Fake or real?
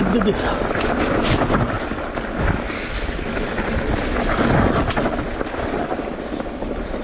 real